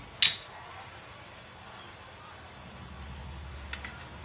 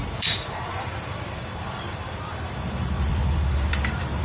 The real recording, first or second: first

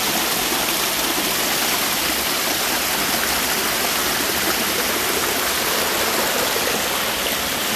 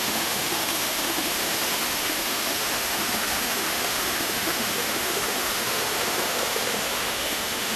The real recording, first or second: first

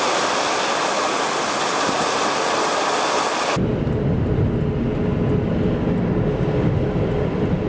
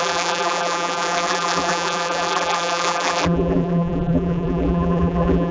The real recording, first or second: first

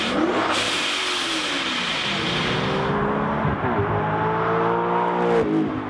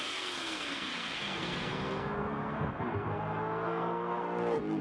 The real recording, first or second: first